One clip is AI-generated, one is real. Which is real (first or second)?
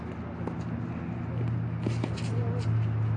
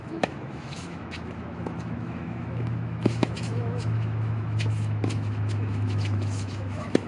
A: first